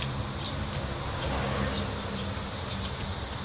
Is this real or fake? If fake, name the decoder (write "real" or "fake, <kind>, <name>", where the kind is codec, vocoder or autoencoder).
real